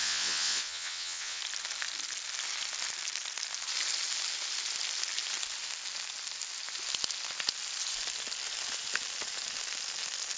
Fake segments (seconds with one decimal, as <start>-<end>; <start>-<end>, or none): 0.0-1.4